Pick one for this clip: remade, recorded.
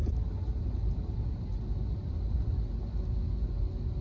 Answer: recorded